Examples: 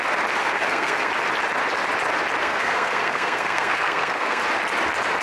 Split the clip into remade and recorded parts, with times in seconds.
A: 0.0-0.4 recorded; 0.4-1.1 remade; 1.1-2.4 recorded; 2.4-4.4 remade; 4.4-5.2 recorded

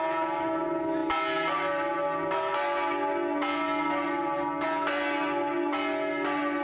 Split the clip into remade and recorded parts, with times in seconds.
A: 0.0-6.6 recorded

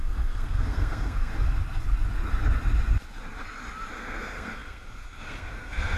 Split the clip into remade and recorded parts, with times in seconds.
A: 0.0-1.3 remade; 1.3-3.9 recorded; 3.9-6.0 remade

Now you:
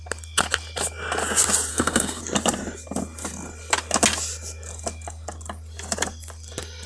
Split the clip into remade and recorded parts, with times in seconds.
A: 0.0-1.7 recorded; 1.7-2.2 remade; 2.2-6.9 recorded

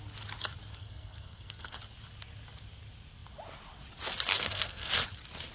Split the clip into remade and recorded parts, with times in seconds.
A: 0.0-0.7 recorded; 0.7-1.8 remade; 1.8-4.3 recorded; 4.3-4.9 remade; 4.9-5.5 recorded

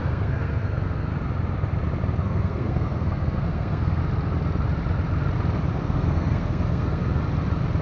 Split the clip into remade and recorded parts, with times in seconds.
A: 0.0-1.1 remade; 1.1-2.2 recorded; 2.2-4.0 remade; 4.0-5.7 recorded; 5.7-7.2 remade; 7.2-7.8 recorded

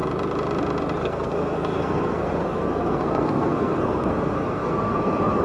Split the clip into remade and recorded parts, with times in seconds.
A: 0.0-1.0 recorded; 1.0-5.4 remade

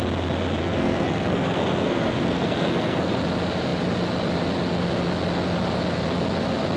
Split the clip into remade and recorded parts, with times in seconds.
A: 0.0-0.6 recorded; 0.6-3.1 remade; 3.1-6.8 recorded